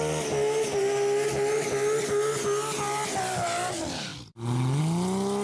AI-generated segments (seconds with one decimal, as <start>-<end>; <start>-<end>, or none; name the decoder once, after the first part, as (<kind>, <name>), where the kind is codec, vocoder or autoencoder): none